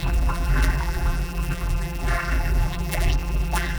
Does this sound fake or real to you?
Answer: fake